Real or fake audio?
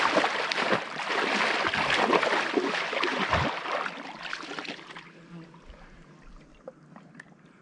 real